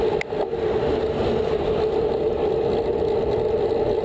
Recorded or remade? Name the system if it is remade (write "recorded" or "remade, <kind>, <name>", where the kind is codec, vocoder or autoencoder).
recorded